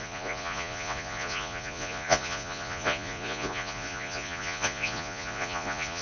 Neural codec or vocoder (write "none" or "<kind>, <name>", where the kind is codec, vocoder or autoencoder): vocoder, Vocos